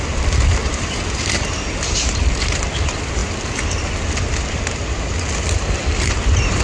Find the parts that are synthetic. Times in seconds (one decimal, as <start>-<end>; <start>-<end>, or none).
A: 0.6-2.6